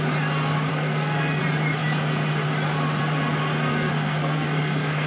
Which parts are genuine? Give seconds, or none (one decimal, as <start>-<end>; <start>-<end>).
0.0-0.7; 1.4-3.7